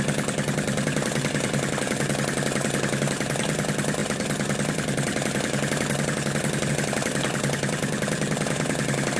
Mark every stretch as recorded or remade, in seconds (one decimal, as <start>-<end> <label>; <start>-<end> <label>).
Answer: 0.0-9.2 recorded